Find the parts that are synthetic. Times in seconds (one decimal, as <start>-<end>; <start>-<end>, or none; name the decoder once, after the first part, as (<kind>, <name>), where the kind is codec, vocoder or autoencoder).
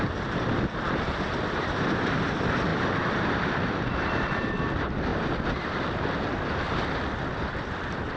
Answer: 0.0-5.1 (vocoder, BigVGAN v2); 7.1-8.2